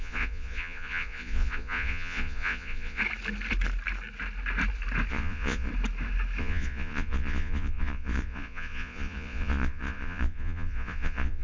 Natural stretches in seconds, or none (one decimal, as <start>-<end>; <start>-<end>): 3.0-5.1; 5.7-6.4